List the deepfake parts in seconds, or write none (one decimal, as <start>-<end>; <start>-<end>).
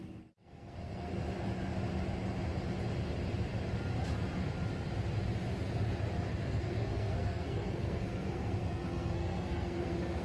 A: 0.0-1.1; 6.4-10.2